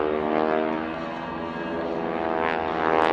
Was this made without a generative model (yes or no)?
yes